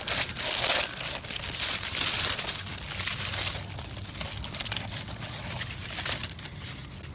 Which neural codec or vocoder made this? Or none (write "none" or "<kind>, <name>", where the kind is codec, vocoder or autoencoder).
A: none